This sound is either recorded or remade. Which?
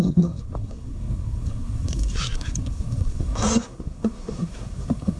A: remade